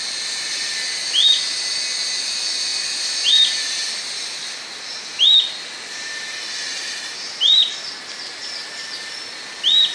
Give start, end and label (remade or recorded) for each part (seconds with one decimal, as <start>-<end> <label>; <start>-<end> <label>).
0.0-9.9 recorded